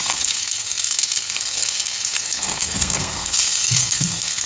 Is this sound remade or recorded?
remade